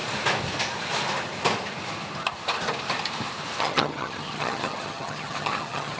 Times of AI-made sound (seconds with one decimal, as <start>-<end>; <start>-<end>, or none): 3.6-6.0